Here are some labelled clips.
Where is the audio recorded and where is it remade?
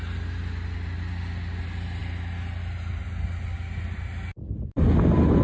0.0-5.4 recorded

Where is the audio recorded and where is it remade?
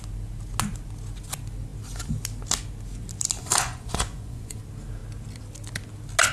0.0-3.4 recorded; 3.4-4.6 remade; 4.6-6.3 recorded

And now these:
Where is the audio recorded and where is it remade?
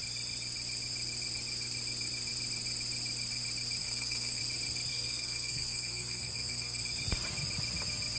0.0-3.8 recorded; 3.8-4.4 remade; 4.4-4.9 recorded; 4.9-6.8 remade; 6.8-8.2 recorded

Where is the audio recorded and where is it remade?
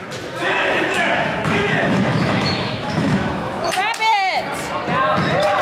0.0-0.4 recorded; 0.4-3.8 remade; 3.8-5.6 recorded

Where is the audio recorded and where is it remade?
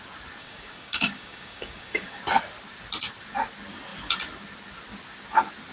0.0-0.4 recorded; 0.4-2.2 remade; 2.2-5.7 recorded